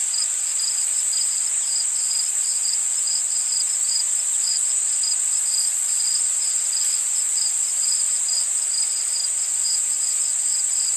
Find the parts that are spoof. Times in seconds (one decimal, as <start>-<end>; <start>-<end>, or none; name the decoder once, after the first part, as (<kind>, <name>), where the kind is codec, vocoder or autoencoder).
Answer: 2.4-3.5 (vocoder, BigVGAN v2); 5.6-8.5